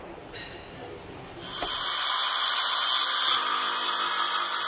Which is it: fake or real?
real